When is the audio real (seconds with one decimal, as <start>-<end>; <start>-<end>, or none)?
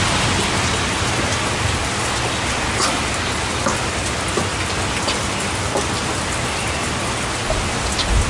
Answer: 0.0-8.3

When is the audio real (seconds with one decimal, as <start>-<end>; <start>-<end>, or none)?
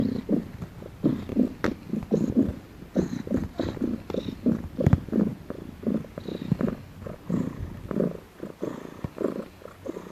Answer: 0.0-10.1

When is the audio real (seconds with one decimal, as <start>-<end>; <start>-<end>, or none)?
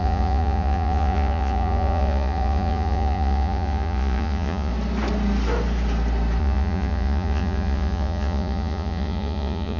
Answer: 4.7-6.4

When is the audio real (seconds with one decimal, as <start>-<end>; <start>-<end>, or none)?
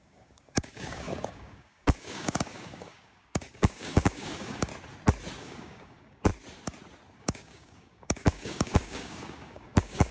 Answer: 4.7-5.4; 6.3-7.2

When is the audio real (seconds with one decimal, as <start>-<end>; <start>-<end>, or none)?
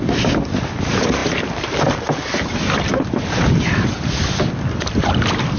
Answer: 0.0-5.6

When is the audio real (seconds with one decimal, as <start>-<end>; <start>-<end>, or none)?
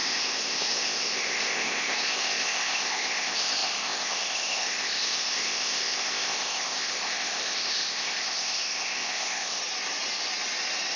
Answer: 9.6-11.0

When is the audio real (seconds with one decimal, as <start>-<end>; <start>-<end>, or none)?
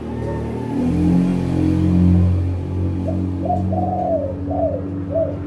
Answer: 0.0-5.5